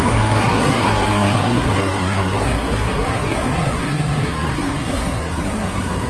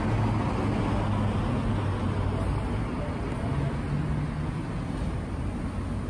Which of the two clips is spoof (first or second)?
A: first